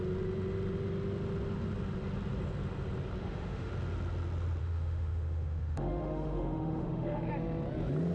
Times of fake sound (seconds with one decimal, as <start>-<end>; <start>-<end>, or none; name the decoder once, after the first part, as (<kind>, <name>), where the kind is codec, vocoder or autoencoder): 3.2-3.7 (autoencoder, DAC-VAE); 4.6-7.3